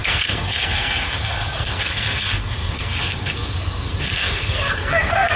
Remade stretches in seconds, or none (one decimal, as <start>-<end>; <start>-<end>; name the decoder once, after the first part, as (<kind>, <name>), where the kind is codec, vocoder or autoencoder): 0.0-5.4 (codec, SNAC)